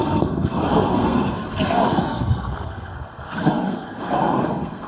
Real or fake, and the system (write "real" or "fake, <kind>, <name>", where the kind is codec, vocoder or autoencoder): fake, codec, SNAC